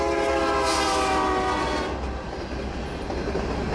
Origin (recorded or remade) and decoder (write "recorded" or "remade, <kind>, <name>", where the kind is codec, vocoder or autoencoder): recorded